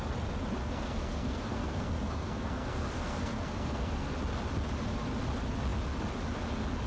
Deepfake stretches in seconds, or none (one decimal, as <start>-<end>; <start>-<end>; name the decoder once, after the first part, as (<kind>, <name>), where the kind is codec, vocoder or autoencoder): 0.6-4.1 (codec, SNAC)